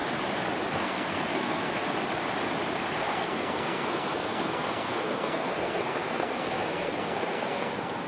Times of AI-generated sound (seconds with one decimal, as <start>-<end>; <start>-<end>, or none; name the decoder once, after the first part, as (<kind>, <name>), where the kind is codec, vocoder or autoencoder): 0.7-1.8 (codec, SNAC); 3.0-8.1